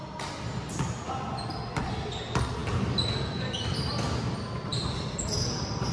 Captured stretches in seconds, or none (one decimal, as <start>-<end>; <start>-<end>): 0.0-5.9